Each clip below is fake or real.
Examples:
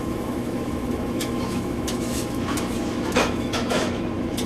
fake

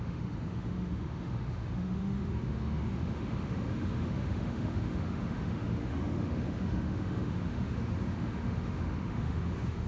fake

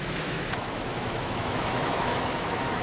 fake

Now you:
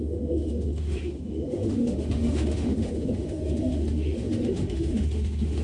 fake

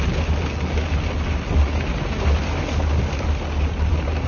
real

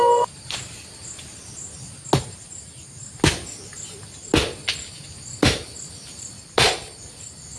real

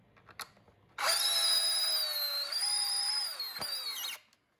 real